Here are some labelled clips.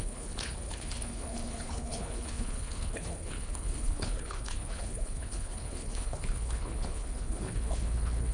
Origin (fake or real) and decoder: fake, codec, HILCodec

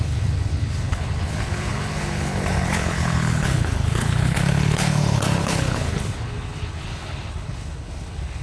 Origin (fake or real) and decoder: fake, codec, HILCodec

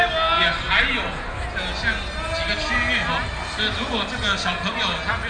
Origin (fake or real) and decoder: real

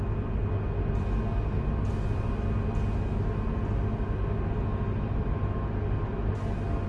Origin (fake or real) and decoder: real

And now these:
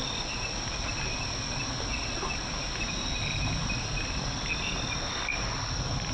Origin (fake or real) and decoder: real